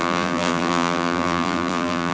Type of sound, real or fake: fake